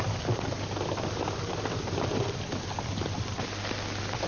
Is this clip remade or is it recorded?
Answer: recorded